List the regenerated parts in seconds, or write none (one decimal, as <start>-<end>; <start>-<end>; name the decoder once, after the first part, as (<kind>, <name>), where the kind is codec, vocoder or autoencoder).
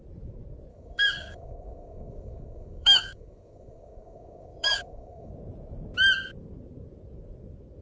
0.7-5.3 (codec, DAC)